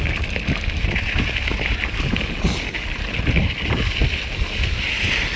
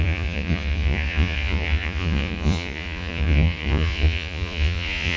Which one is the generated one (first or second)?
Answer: second